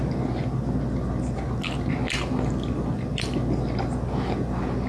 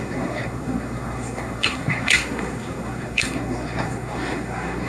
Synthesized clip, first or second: second